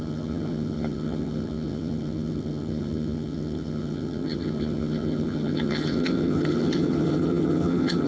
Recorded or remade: remade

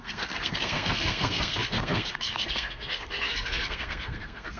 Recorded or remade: remade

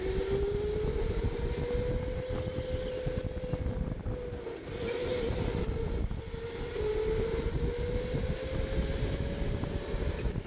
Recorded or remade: recorded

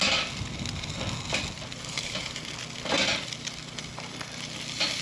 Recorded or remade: recorded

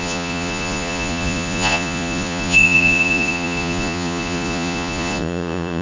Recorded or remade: remade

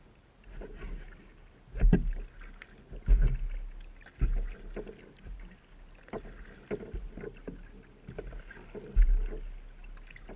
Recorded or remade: recorded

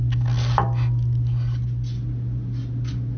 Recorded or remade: recorded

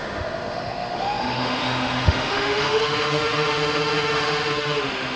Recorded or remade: remade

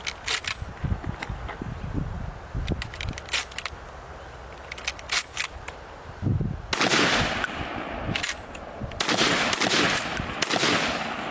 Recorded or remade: recorded